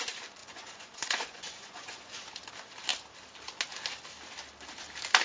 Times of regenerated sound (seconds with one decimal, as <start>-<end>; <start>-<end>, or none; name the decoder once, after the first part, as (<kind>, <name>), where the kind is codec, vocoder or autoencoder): 0.4-2.1 (vocoder, Vocos)